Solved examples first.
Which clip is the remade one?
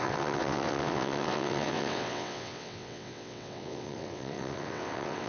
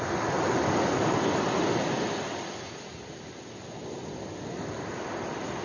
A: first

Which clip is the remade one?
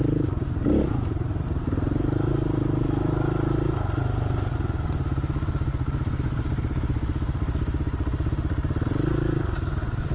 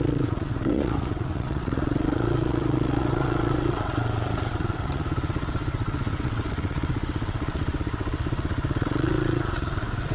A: second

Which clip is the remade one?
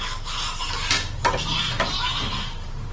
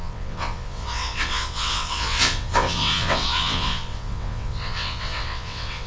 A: second